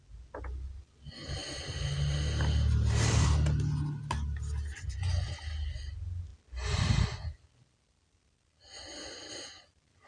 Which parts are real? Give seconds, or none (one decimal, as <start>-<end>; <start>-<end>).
0.0-10.1